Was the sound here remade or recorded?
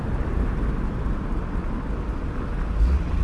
recorded